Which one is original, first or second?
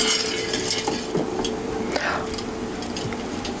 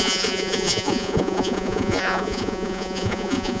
first